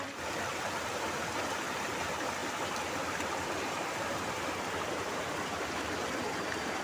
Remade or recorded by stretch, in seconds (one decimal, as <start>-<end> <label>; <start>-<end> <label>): 0.0-2.4 recorded; 2.4-6.8 remade